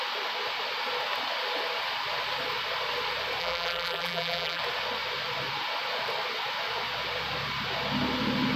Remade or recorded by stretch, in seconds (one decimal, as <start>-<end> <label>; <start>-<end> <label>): 0.0-3.4 recorded; 3.4-4.6 remade; 4.6-8.6 recorded